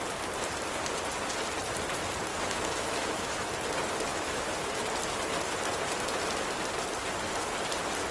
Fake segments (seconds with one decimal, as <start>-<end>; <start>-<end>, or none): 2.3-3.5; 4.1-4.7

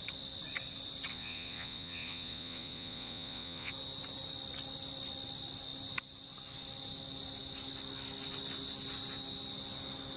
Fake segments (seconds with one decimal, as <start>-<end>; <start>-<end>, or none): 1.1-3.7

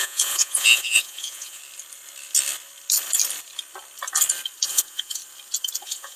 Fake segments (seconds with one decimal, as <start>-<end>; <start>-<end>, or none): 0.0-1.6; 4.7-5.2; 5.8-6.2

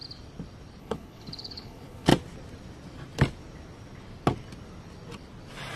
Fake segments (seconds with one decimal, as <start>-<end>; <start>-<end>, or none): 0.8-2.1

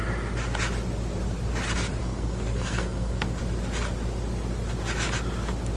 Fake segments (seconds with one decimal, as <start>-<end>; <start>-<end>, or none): 2.0-3.4

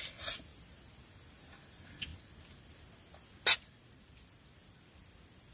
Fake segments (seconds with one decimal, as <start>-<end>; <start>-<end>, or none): none

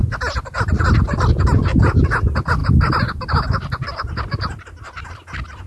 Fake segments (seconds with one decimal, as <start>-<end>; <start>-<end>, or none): none